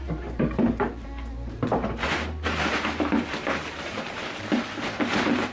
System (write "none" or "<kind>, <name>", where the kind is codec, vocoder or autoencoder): vocoder, BigVGAN v2